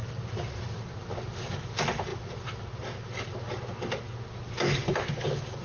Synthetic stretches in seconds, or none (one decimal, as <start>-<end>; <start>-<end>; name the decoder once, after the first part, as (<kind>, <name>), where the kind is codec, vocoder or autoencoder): none